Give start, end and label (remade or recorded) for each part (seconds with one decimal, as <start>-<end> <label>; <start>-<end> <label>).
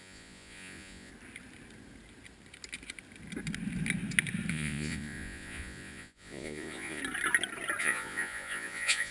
0.0-1.1 remade; 1.1-4.5 recorded; 4.5-7.0 remade; 7.0-7.8 recorded; 7.8-9.1 remade